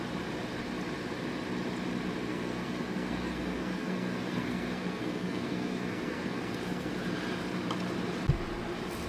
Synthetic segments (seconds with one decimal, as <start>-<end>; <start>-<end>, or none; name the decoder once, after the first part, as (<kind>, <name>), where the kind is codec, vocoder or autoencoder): 2.3-6.9 (codec, SNAC)